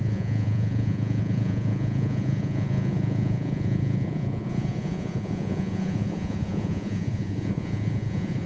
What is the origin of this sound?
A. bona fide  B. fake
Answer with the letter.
B